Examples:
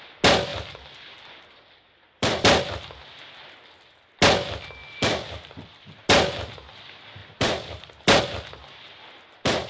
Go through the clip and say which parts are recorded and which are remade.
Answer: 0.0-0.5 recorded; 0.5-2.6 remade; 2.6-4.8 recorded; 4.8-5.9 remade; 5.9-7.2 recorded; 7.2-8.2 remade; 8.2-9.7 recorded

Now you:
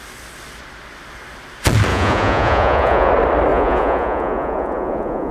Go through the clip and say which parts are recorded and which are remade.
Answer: 0.0-1.9 recorded; 1.9-3.1 remade; 3.1-3.5 recorded; 3.5-5.3 remade

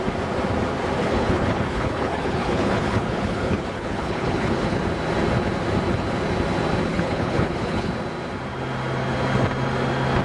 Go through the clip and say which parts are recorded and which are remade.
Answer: 0.0-1.0 recorded; 1.0-4.8 remade; 4.8-6.9 recorded; 6.9-7.9 remade; 7.9-10.2 recorded

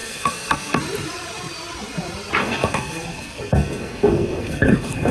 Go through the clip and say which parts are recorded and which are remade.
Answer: 0.0-0.8 remade; 0.8-2.4 recorded; 2.4-5.1 remade

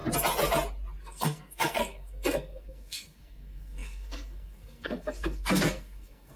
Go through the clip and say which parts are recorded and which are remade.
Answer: 0.0-1.0 recorded; 1.0-6.4 remade

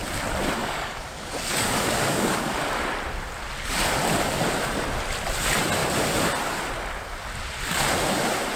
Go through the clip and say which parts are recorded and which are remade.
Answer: 0.0-0.6 recorded; 0.6-2.6 remade; 2.6-8.6 recorded

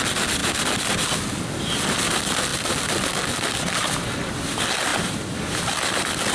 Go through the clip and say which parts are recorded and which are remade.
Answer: 0.0-6.3 recorded